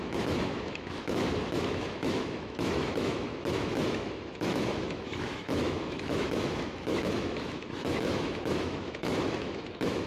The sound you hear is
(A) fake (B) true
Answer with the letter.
A